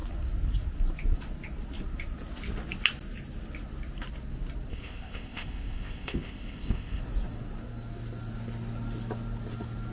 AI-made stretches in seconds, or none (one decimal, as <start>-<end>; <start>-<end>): 4.7-7.0